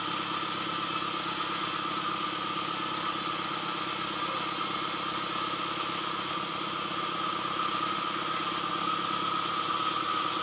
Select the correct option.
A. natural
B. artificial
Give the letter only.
A